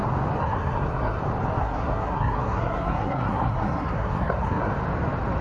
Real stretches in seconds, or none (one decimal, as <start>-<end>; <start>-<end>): 0.0-0.4; 1.2-1.6; 4.7-5.4